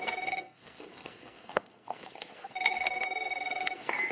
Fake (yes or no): yes